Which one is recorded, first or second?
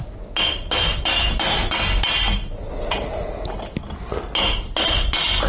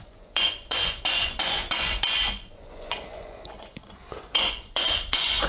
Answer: first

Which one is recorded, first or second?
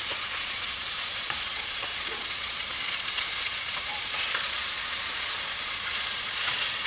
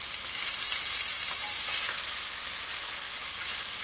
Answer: second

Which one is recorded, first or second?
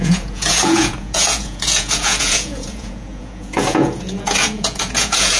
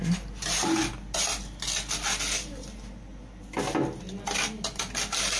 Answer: second